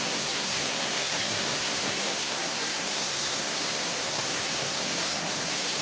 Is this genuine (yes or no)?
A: no